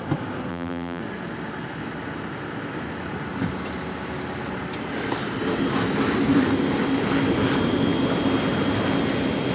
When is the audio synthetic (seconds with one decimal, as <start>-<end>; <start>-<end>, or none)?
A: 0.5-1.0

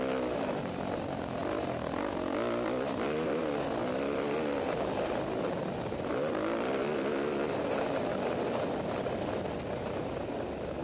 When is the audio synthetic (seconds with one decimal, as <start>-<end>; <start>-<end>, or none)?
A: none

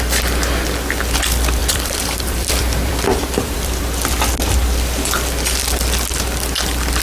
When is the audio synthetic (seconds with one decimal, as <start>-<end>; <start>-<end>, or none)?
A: 1.6-3.8

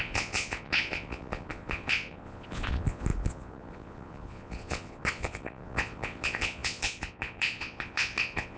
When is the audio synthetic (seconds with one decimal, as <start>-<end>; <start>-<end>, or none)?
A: 0.0-8.6

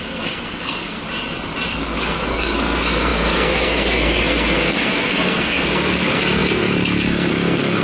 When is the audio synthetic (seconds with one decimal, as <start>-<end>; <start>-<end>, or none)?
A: 0.0-1.0; 1.7-7.8